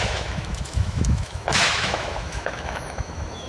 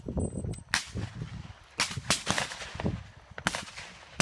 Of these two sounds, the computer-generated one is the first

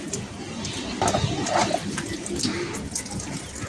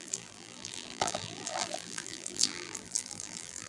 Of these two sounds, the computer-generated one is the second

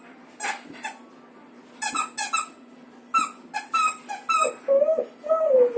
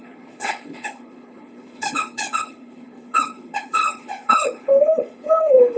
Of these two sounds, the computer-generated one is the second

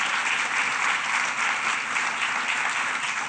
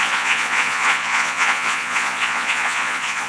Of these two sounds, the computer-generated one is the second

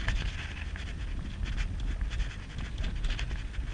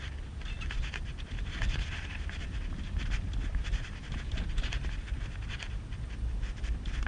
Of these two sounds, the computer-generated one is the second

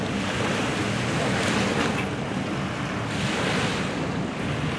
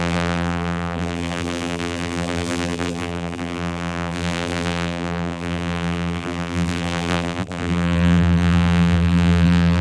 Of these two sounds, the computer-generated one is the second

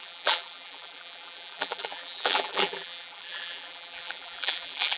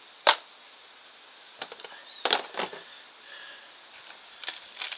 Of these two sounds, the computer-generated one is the first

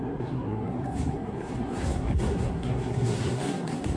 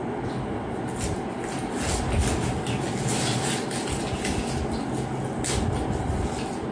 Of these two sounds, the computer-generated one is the first